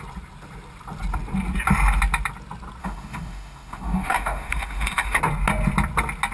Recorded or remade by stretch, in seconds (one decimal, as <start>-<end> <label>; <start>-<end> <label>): 0.0-2.8 recorded; 2.8-5.2 remade; 5.2-6.3 recorded